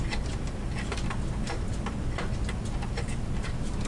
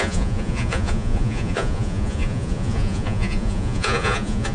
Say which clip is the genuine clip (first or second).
first